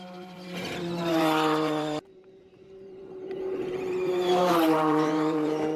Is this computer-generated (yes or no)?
yes